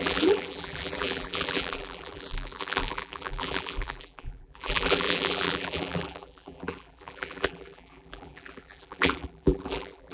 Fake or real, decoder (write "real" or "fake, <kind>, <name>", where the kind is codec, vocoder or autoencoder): fake, vocoder, BigVGAN v2